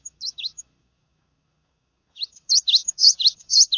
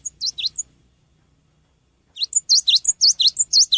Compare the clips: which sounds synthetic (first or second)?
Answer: first